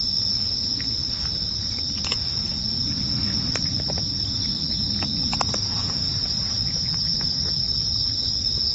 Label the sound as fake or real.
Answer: real